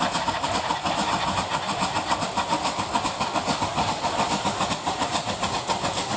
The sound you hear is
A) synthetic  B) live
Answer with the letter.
B